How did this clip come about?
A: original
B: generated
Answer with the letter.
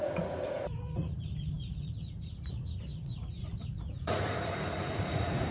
B